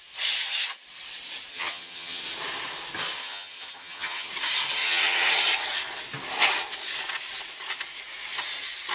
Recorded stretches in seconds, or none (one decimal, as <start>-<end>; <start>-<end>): 0.0-1.5; 2.2-3.2; 4.3-4.8; 5.3-8.9